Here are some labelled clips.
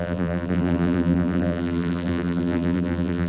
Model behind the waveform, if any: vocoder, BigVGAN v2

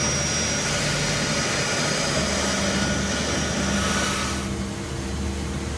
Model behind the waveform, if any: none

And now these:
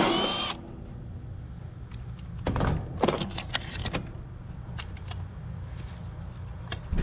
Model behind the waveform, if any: none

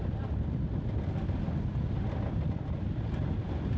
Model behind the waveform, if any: none